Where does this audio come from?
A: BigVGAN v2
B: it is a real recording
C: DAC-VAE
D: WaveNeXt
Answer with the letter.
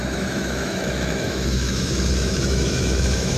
C